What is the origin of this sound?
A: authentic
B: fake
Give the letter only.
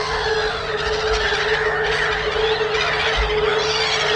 A